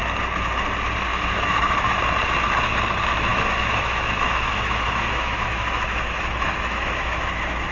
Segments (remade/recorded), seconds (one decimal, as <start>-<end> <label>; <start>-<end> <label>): 0.0-1.1 recorded; 1.1-2.0 remade; 2.0-3.3 recorded; 3.3-7.7 remade